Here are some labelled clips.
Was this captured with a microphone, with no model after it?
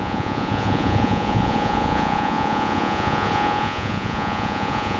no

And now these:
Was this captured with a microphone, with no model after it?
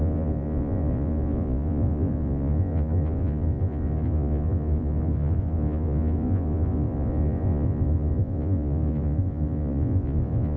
no